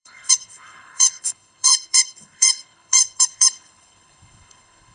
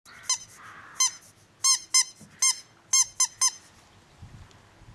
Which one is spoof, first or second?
first